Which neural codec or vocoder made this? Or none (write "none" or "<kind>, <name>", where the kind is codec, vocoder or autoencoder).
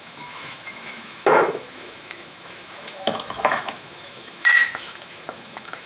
autoencoder, DAC-VAE